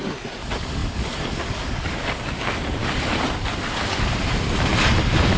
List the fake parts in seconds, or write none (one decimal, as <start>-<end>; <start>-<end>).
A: 0.8-1.4